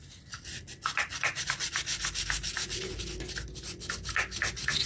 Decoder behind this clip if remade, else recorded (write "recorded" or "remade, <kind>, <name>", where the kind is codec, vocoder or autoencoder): recorded